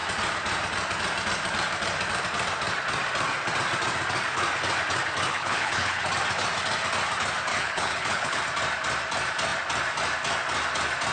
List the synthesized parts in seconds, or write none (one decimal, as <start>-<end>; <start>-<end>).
5.3-6.1; 7.5-8.4